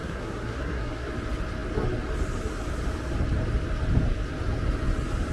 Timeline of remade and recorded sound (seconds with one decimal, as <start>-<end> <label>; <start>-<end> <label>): 0.0-1.1 remade; 1.1-5.3 recorded